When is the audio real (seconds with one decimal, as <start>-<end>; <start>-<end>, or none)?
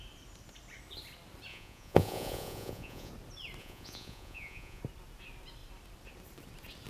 0.0-1.5; 3.1-3.6; 4.8-6.9